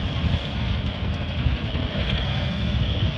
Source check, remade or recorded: remade